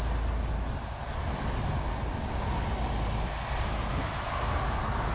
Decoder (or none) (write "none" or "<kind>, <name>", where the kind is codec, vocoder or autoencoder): none